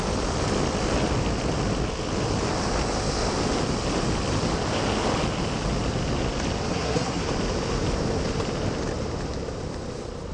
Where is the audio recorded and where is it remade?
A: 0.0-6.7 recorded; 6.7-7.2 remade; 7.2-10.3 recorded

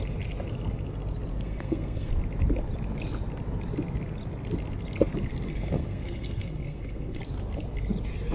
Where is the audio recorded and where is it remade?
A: 0.0-1.3 recorded; 1.3-2.1 remade; 2.1-5.5 recorded; 5.5-7.2 remade; 7.2-8.3 recorded